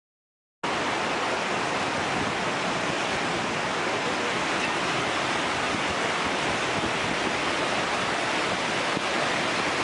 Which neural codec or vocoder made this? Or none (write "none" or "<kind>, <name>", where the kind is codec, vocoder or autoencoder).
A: none